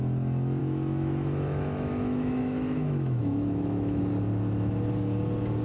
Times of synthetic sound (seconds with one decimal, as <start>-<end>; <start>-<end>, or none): 0.6-4.0